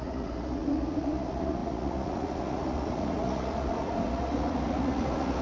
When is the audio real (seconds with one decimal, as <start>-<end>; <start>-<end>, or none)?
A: none